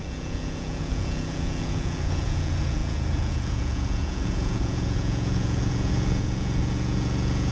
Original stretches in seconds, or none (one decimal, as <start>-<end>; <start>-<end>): none